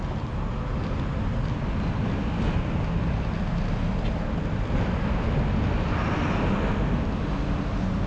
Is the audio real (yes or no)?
yes